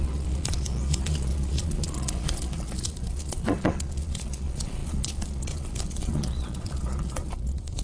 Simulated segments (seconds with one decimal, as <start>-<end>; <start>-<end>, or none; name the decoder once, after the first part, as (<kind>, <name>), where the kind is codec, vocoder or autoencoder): 0.0-7.8 (vocoder, Vocos)